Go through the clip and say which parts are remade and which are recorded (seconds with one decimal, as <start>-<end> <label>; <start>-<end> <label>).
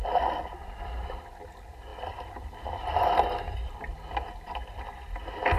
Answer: 0.0-5.6 recorded